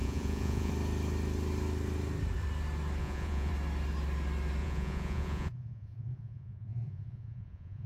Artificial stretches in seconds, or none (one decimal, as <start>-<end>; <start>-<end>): 0.0-0.7; 3.0-3.5; 4.6-7.9